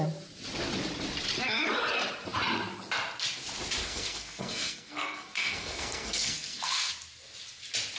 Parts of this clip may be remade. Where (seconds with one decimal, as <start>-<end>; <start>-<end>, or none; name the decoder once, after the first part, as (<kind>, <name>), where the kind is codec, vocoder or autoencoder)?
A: 3.8-6.9 (codec, SNAC)